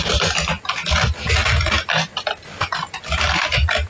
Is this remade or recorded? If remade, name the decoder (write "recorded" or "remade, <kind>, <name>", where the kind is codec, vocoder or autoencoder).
recorded